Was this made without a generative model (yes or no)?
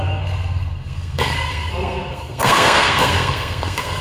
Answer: no